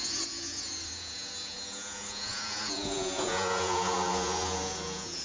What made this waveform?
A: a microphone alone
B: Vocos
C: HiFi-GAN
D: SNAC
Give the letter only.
B